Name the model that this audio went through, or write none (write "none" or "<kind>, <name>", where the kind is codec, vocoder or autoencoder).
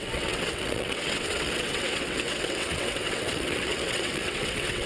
vocoder, WaveNeXt